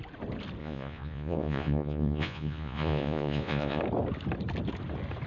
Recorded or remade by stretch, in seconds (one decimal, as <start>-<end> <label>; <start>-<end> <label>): 0.0-0.6 recorded; 0.6-3.8 remade; 3.8-5.3 recorded